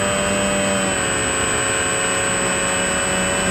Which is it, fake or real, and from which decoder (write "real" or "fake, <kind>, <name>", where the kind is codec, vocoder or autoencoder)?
real